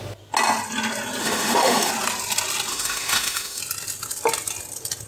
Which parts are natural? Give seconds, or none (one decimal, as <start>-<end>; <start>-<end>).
0.0-1.2; 1.9-2.7; 3.6-5.1